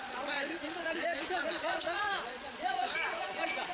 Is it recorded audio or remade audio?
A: remade